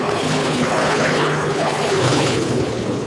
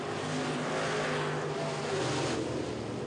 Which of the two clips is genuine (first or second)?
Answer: second